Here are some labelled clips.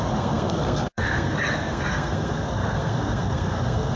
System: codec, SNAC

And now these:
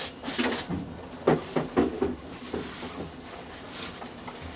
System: none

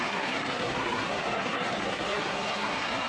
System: codec, SNAC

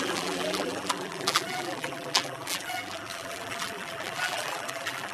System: vocoder, BigVGAN v2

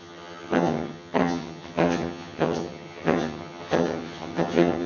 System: vocoder, HiFi-GAN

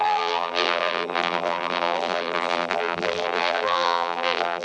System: vocoder, BigVGAN v2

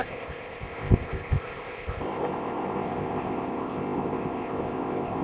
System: codec, ZipCodec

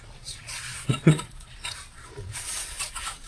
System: vocoder, Vocos